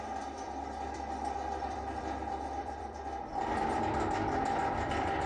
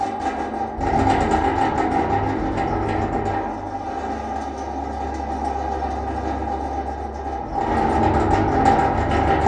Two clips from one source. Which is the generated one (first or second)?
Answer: first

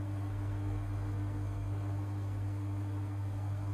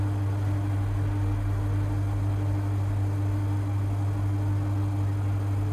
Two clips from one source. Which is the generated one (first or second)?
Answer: first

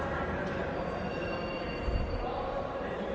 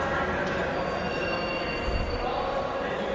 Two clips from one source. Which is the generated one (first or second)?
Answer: first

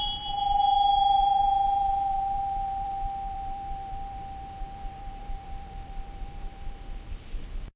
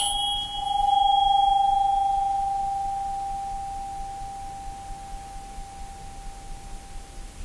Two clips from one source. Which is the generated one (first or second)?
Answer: first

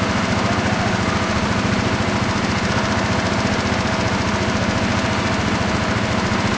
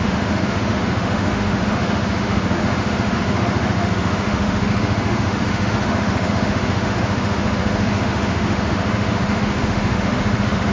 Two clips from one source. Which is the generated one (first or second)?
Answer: second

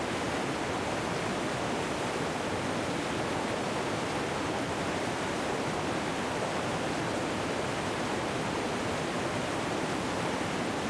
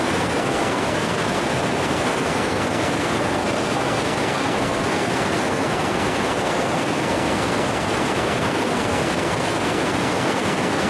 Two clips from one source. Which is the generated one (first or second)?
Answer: second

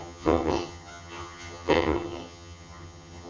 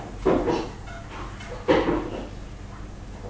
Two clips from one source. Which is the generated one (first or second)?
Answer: first